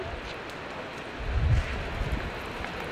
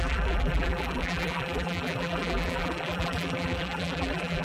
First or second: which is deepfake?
second